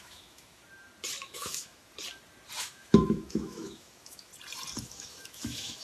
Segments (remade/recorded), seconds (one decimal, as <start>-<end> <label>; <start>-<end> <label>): 0.0-0.6 remade; 0.6-1.2 recorded; 1.2-1.9 remade; 1.9-2.6 recorded; 2.6-4.3 remade; 4.3-4.8 recorded; 4.8-5.8 remade